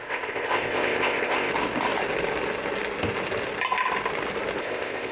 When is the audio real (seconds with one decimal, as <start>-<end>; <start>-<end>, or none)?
1.5-4.6